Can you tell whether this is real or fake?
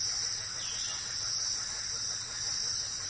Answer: real